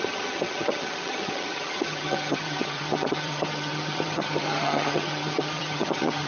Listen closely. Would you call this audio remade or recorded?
remade